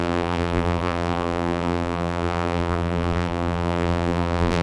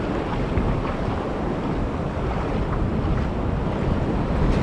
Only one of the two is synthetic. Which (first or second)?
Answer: first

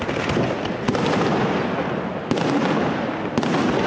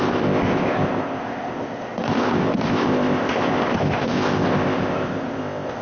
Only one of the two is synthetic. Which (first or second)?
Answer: second